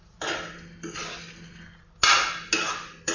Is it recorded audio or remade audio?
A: recorded